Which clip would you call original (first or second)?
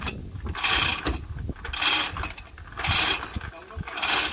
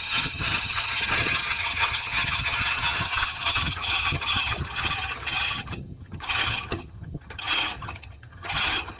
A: first